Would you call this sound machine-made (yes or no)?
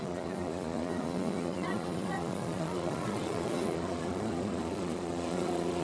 yes